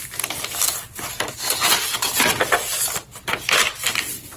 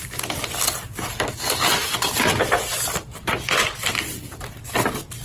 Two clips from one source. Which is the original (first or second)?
first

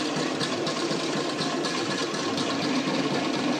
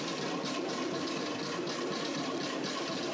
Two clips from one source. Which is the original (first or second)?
second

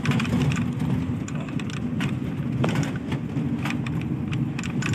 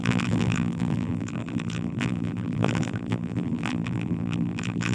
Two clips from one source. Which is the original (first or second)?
first